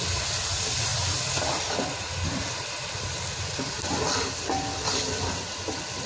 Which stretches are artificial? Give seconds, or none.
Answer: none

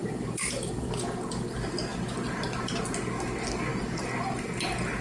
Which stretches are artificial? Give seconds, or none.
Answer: 0.0-0.5 (vocoder, BigVGAN v2)

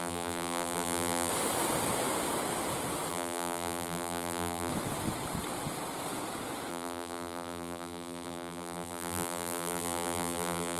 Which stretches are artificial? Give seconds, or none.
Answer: 0.0-1.3 (vocoder, BigVGAN v2); 3.1-4.7; 6.7-10.8

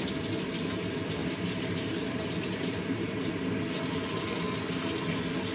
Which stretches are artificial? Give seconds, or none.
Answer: 1.2-3.3 (vocoder, BigVGAN v2)

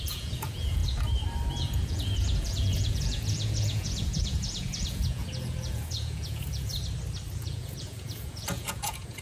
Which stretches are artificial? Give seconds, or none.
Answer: 0.0-0.8 (vocoder, Vocos); 1.5-6.7; 7.3-9.2

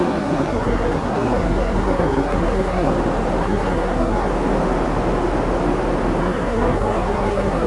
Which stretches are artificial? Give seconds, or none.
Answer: 0.0-2.9 (codec, SNAC); 3.4-4.3; 6.2-7.7

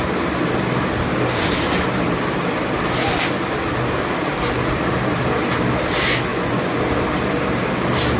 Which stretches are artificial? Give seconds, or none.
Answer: 6.3-6.8 (vocoder, Vocos)